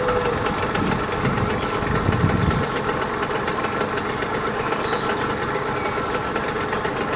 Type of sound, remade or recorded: recorded